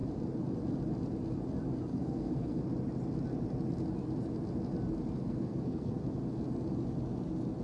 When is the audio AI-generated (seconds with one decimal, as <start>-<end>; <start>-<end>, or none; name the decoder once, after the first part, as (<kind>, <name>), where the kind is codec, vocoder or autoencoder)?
1.9-2.6 (codec, SNAC); 5.2-6.0